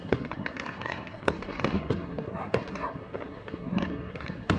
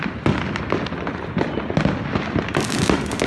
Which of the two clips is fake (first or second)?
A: first